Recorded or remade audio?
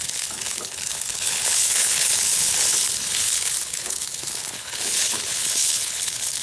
remade